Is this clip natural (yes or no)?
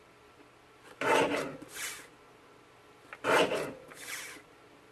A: yes